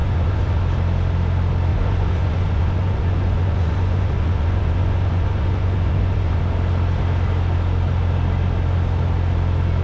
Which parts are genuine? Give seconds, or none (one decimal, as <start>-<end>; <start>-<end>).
0.6-1.7; 6.4-9.8